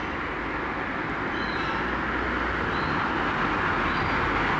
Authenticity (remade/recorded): recorded